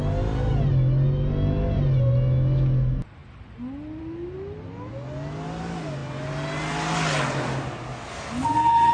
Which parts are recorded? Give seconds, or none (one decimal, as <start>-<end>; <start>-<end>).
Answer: 0.0-8.9